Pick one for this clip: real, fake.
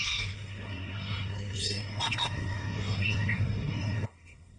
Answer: fake